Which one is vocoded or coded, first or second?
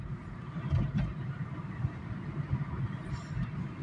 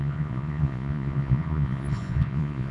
second